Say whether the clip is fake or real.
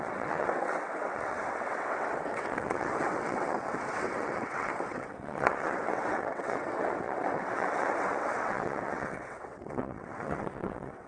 fake